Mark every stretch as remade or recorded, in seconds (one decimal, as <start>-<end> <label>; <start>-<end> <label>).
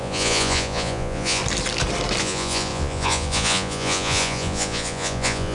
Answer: 0.0-1.4 remade; 1.4-2.2 recorded; 2.2-5.5 remade